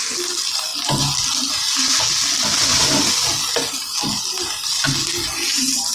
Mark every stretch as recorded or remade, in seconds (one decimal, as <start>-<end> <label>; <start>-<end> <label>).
0.0-5.9 recorded